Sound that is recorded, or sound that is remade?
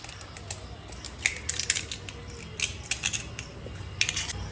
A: recorded